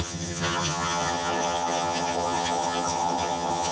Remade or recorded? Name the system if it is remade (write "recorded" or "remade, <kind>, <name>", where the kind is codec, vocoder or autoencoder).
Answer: remade, vocoder, HiFi-GAN